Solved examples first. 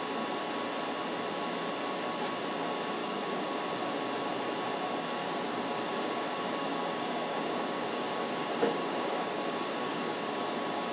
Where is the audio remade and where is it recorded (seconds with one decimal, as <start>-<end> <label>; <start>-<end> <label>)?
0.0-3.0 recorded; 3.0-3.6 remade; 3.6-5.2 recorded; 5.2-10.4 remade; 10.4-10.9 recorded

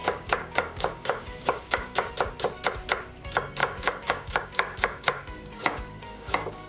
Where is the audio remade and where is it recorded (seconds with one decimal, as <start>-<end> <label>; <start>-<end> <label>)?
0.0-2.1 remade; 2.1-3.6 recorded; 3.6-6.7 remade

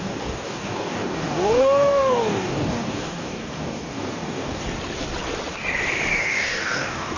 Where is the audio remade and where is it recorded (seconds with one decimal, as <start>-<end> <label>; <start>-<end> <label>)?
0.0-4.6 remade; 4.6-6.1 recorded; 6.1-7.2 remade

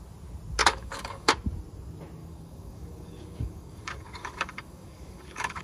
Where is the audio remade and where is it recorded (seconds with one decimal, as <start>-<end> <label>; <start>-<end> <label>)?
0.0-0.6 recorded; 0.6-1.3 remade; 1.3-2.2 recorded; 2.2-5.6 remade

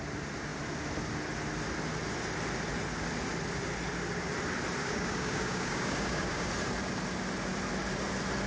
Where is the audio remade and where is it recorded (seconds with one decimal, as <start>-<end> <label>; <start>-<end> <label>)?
0.0-4.8 recorded; 4.8-6.5 remade; 6.5-8.5 recorded

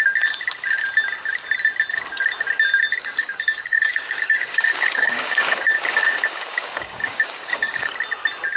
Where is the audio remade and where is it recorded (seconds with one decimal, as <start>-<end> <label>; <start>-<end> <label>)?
0.0-3.2 recorded; 3.2-7.9 remade; 7.9-8.6 recorded